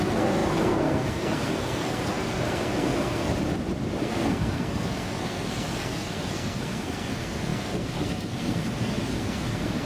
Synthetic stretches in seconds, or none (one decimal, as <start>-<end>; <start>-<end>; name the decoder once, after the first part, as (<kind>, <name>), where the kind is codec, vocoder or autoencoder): 0.0-3.3 (codec, SNAC); 4.0-9.9